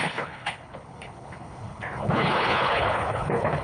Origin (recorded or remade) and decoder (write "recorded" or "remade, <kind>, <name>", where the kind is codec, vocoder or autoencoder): remade, codec, HILCodec